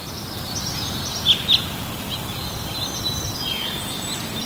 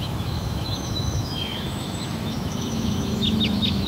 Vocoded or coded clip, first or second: second